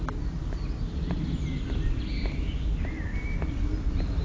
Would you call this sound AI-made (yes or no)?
no